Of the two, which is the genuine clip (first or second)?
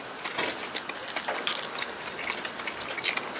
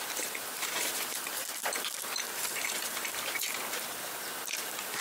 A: first